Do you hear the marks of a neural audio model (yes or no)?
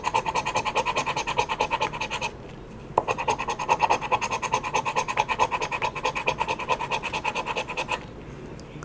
no